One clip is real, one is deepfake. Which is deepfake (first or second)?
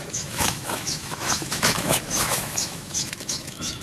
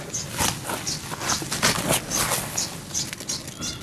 first